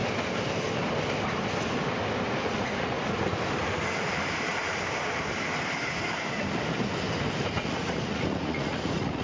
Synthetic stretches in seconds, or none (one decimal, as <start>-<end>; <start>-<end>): 2.4-2.9; 7.5-9.2